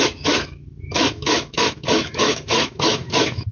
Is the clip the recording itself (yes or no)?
no